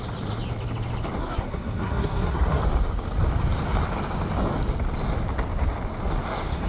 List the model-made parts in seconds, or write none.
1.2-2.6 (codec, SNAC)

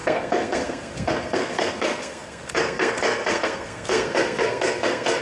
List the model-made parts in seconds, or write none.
0.0-5.2 (codec, SNAC)

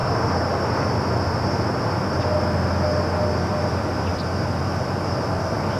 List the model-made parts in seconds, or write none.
3.5-4.1 (vocoder, BigVGAN v2); 4.6-5.8